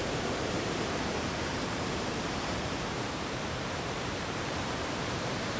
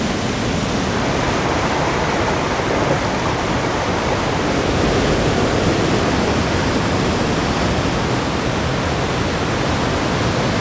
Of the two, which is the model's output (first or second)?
first